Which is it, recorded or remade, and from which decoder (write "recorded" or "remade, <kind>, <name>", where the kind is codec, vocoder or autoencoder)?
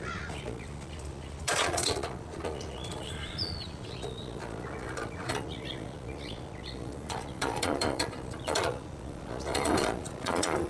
remade, vocoder, Vocos